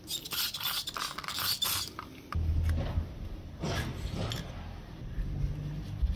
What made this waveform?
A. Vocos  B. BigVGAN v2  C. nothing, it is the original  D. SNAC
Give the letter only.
C